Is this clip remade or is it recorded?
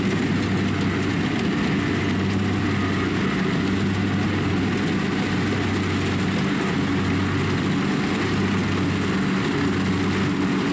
recorded